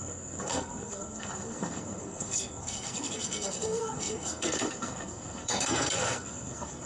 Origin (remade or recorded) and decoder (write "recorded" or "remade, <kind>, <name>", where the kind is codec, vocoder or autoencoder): remade, codec, SNAC